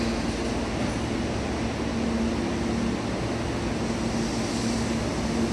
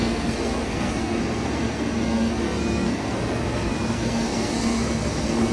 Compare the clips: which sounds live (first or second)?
first